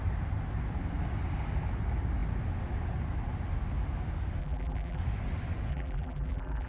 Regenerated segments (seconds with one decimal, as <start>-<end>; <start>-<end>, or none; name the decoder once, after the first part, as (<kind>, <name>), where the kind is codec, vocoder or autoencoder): 4.4-5.0 (vocoder, BigVGAN v2); 5.7-6.7